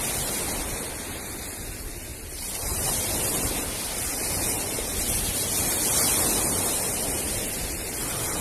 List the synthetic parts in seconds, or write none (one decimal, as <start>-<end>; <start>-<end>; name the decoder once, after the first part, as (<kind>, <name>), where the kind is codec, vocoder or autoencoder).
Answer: none